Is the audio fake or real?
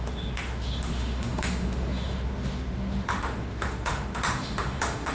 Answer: fake